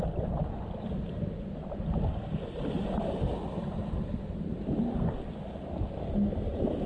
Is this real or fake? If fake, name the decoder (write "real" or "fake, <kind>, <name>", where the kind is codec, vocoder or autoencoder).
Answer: real